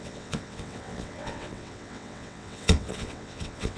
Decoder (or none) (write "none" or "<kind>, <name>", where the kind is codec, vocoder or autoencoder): vocoder, WaveNeXt